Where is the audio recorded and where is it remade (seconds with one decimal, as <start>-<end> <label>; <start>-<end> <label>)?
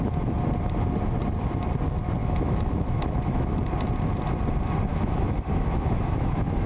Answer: 0.0-2.2 recorded; 2.2-3.6 remade; 3.6-4.9 recorded; 4.9-6.7 remade